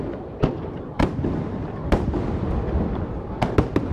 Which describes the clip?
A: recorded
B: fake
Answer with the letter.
B